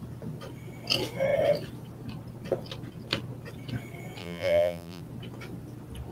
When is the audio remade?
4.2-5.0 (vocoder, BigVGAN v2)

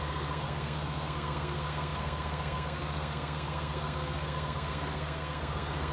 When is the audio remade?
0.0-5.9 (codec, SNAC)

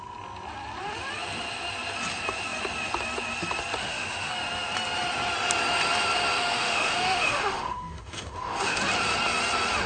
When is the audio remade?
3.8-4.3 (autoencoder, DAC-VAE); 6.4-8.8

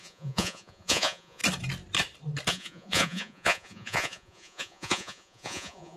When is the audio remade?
0.0-1.4 (vocoder, Vocos); 2.5-6.0

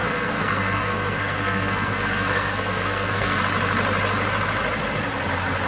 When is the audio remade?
0.0-3.4 (codec, SNAC)

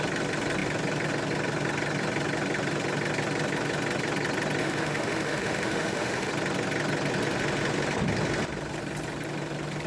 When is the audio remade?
4.6-6.3 (autoencoder, DAC-VAE)

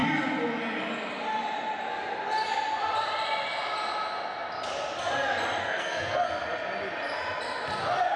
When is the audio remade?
5.6-6.3 (codec, SNAC)

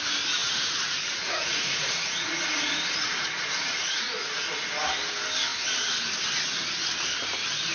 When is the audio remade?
0.4-4.5 (vocoder, Vocos)